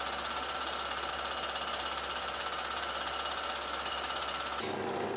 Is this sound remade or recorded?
recorded